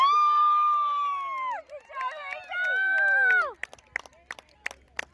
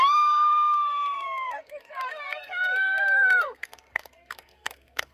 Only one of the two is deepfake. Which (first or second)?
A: second